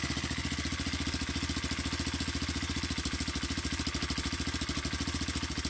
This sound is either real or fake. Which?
real